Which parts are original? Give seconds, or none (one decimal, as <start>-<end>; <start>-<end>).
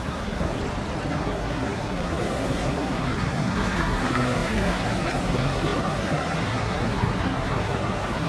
0.6-1.1